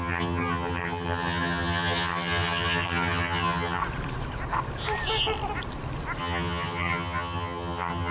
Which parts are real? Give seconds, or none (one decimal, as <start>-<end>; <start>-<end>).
3.8-6.2